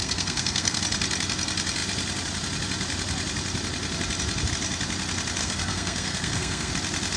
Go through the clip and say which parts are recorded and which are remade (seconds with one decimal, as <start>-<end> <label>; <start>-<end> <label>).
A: 0.0-0.8 remade; 0.8-5.4 recorded; 5.4-6.7 remade; 6.7-7.2 recorded